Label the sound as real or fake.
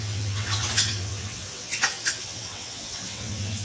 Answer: fake